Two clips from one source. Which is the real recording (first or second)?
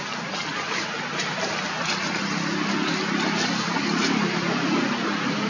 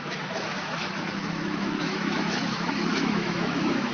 first